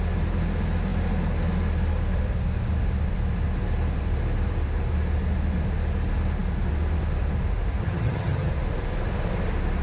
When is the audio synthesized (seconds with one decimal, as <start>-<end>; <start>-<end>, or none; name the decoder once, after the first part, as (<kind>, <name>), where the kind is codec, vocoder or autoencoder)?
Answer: 7.8-8.5 (vocoder, HiFi-GAN)